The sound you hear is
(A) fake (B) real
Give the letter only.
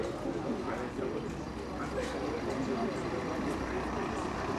B